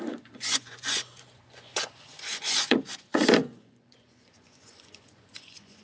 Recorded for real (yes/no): no